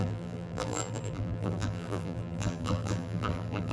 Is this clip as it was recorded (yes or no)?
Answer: no